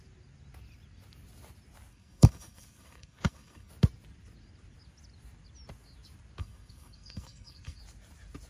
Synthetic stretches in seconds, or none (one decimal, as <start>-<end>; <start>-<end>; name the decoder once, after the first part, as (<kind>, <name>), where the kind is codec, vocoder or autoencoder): 1.9-3.7 (codec, SNAC); 6.4-7.8